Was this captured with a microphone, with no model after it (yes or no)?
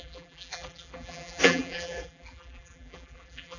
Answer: no